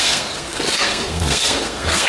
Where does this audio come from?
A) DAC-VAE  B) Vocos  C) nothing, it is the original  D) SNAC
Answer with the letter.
D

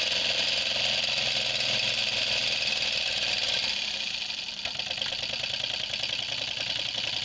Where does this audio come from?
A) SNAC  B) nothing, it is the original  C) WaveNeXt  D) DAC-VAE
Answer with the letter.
B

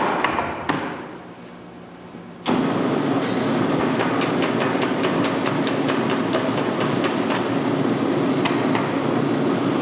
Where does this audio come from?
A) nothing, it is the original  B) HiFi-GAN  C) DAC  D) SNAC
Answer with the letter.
A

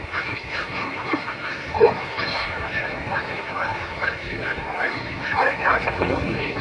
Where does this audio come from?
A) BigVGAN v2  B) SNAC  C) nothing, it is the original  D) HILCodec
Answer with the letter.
B